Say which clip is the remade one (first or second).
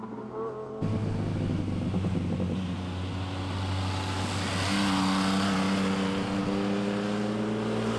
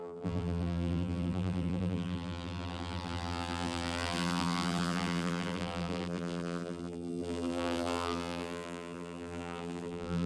second